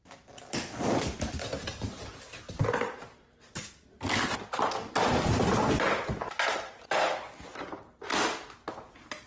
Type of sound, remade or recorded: recorded